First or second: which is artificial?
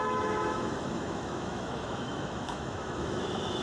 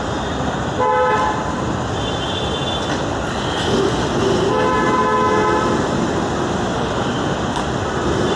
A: first